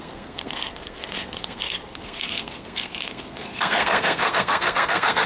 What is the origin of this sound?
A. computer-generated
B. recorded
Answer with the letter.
A